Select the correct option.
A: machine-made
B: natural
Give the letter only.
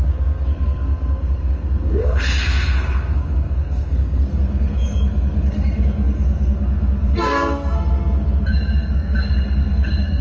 A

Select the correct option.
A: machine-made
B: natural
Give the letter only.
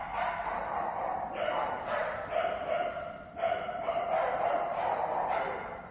A